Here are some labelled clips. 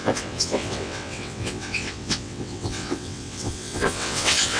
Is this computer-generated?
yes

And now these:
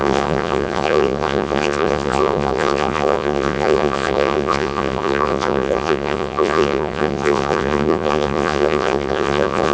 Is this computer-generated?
yes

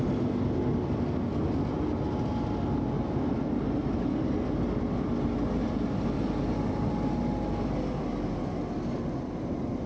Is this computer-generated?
no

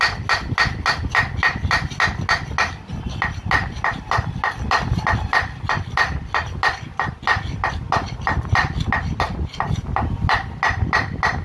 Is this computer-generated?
no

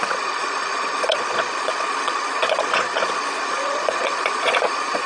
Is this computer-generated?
yes